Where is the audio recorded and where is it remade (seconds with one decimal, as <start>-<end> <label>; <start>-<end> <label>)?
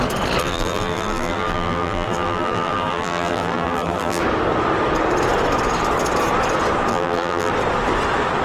0.0-0.4 recorded; 0.4-4.2 remade; 4.2-6.9 recorded; 6.9-7.5 remade; 7.5-8.4 recorded